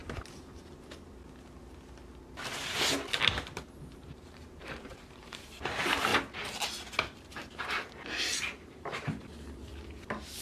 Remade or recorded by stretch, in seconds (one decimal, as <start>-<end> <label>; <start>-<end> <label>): 0.0-4.0 recorded; 4.0-6.1 remade; 6.1-8.8 recorded; 8.8-9.7 remade; 9.7-10.4 recorded